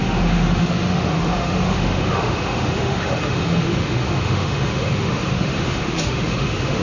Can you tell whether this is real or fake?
fake